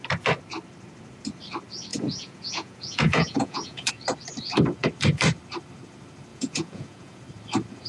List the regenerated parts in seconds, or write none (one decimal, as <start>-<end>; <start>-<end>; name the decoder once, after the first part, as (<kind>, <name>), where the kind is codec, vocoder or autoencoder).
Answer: 1.9-3.9 (vocoder, Vocos); 6.3-7.2